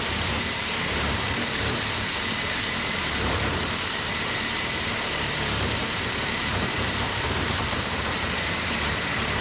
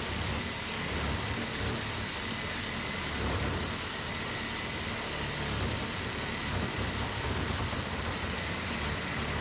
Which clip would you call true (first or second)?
second